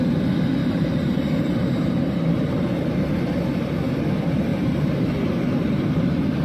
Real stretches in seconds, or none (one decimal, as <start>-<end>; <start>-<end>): 0.0-0.6; 2.6-4.5; 5.7-6.4